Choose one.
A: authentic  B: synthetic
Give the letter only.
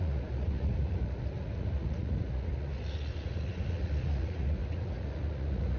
B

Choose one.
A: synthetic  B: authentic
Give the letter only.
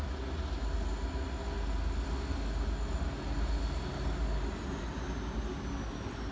B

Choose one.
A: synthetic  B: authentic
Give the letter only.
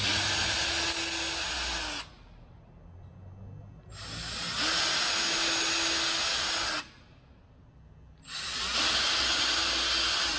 B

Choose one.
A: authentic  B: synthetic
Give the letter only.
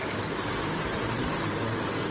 A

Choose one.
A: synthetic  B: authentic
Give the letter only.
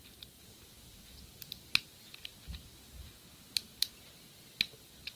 B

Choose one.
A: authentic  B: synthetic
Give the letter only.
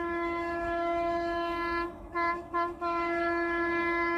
B